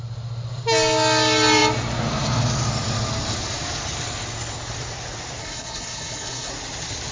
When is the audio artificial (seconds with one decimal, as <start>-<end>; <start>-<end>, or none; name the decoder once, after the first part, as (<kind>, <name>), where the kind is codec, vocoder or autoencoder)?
5.4-6.5 (codec, HILCodec)

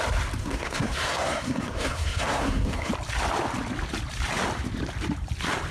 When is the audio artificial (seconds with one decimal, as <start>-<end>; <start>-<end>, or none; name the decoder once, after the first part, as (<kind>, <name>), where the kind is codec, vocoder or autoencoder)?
0.4-2.9 (codec, SNAC)

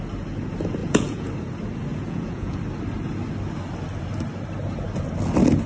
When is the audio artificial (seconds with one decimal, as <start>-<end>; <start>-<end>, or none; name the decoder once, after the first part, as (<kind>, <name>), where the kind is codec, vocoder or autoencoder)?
0.8-1.3 (vocoder, Vocos); 1.9-2.6

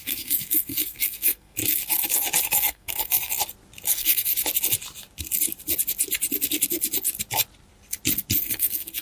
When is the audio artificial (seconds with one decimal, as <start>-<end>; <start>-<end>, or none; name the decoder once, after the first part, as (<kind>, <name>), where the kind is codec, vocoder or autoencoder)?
0.0-1.6 (codec, SNAC); 2.4-3.4; 3.9-4.3; 8.4-9.0

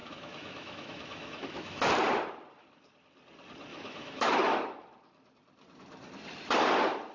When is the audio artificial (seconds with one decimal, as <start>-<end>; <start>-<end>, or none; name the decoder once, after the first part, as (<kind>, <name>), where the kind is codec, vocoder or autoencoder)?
0.0-1.9 (autoencoder, DAC-VAE); 3.7-4.3

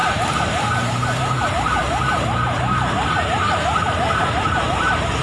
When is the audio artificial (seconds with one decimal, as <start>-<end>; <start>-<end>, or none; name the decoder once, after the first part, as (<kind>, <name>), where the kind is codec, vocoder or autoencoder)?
0.0-5.2 (vocoder, BigVGAN v2)

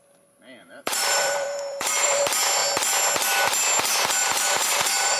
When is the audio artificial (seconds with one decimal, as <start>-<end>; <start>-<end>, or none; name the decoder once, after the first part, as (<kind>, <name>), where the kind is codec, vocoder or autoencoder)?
0.6-2.2 (vocoder, BigVGAN v2); 4.2-5.2